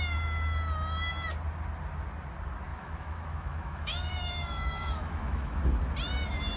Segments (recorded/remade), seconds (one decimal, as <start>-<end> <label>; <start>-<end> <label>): 0.0-2.7 recorded; 2.7-5.6 remade; 5.6-6.6 recorded